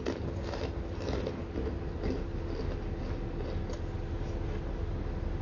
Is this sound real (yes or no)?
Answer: yes